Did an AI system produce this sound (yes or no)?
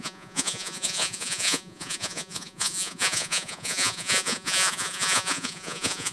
yes